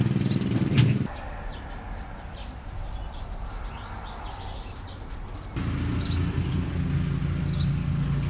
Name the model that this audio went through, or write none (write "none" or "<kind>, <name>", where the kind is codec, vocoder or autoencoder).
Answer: none